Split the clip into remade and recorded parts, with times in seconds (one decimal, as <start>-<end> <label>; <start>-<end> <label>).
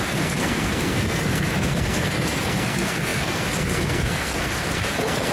0.0-5.3 remade